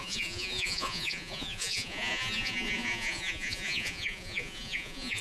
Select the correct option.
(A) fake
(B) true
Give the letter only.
A